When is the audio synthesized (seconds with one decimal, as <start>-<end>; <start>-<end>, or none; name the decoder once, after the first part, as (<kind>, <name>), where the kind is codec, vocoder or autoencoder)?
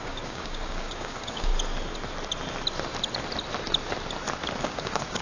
0.0-1.5 (codec, DAC); 4.6-5.2